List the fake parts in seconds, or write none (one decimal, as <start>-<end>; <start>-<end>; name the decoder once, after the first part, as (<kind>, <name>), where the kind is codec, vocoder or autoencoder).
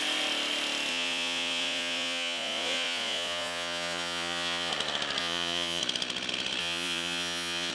0.9-4.7 (vocoder, Vocos); 5.2-5.8; 6.6-7.7